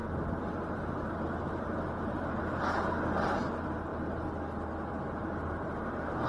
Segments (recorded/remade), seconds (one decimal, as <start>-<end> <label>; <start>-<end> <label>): 0.0-6.3 recorded